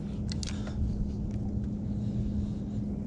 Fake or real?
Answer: real